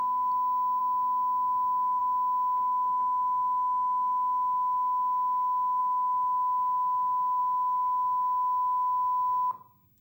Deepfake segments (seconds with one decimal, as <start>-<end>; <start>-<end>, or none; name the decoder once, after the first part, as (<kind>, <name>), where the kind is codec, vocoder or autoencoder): none